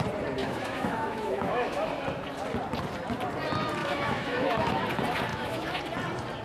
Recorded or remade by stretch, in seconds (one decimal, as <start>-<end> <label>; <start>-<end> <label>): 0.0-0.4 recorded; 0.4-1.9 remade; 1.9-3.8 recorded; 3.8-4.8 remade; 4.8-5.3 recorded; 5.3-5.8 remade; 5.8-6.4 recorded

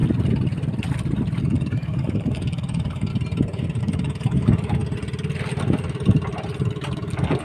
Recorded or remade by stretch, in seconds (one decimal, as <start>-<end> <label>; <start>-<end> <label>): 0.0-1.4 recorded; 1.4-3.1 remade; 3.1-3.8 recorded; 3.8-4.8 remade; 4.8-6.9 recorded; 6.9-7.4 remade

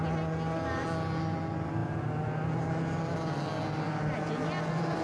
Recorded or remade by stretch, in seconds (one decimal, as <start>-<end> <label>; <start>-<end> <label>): 0.0-5.0 recorded